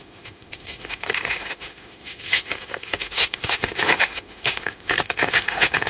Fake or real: fake